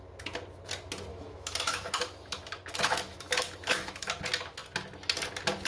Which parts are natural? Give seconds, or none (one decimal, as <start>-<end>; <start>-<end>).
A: 0.0-1.1; 4.1-5.7